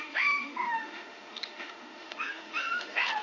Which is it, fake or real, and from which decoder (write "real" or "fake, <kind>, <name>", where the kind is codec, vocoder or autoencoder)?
fake, autoencoder, DAC-VAE